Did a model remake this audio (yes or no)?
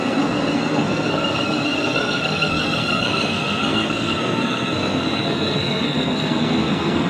yes